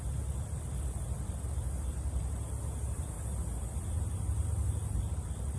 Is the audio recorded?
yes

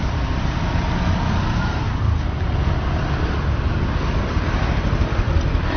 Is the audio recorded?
yes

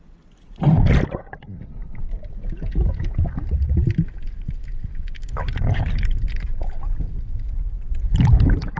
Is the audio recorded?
yes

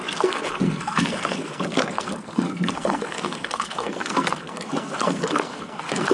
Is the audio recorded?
no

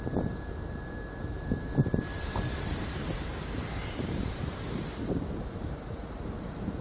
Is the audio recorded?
no